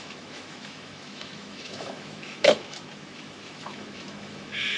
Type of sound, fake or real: fake